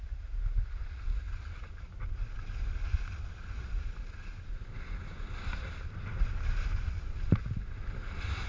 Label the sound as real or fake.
real